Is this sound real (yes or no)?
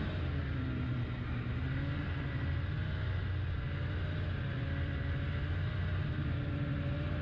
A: yes